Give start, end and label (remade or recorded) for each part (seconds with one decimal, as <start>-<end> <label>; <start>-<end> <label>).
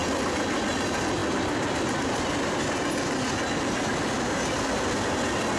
0.0-5.6 recorded